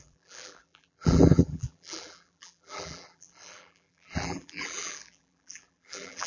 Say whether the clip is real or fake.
fake